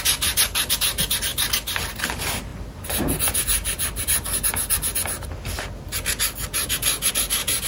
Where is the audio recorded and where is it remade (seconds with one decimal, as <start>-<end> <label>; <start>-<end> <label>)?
0.0-7.7 recorded